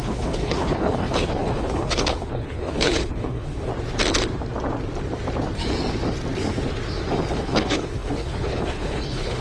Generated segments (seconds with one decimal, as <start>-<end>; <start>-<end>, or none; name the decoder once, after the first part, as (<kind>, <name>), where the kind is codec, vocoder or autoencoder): 0.0-3.7 (codec, HILCodec); 7.3-9.4